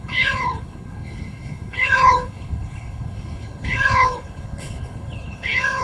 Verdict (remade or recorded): remade